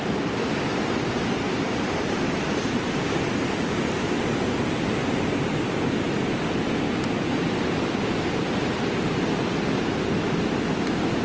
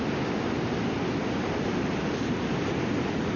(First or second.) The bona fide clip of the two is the second